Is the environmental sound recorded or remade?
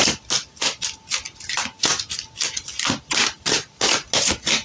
recorded